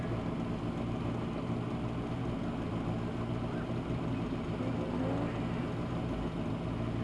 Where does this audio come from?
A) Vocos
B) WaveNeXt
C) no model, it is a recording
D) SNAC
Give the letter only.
C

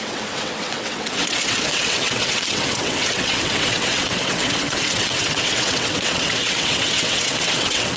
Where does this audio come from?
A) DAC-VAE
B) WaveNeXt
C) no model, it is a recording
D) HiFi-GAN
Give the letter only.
B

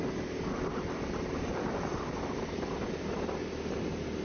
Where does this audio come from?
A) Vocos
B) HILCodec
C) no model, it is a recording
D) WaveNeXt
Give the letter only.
C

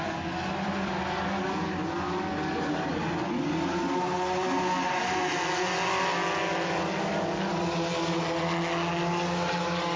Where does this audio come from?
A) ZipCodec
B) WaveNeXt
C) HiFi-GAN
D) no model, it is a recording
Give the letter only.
D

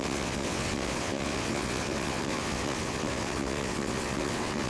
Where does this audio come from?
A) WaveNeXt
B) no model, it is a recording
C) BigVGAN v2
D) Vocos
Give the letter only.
A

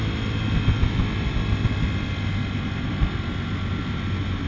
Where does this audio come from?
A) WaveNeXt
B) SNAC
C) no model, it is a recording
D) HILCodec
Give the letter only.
C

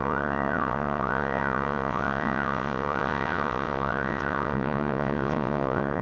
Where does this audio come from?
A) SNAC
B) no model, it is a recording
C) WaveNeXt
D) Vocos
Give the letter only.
C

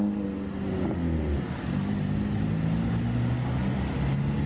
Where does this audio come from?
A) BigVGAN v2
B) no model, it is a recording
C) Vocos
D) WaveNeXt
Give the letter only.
B